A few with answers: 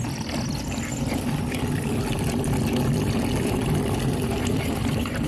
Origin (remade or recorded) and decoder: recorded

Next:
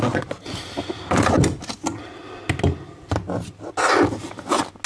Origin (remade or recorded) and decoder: recorded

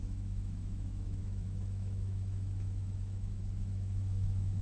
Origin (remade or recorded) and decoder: remade, autoencoder, DAC-VAE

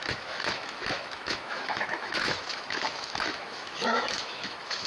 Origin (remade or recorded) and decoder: remade, autoencoder, DAC-VAE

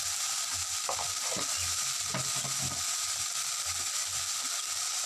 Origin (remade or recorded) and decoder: recorded